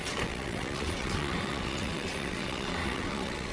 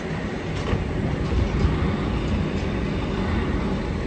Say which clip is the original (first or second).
second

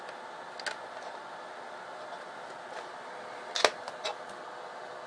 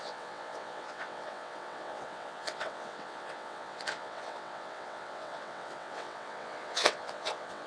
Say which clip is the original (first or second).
first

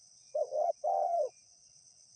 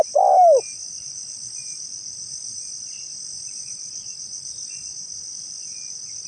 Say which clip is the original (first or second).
second